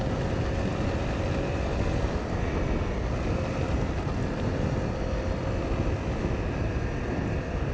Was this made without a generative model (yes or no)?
yes